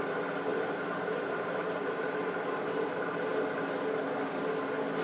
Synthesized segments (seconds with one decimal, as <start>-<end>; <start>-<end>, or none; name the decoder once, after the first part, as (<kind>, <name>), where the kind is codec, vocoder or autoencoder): 0.5-2.9 (vocoder, BigVGAN v2)